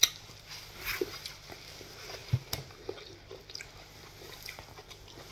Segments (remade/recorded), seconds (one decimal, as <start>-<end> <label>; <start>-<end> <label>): 0.0-5.3 recorded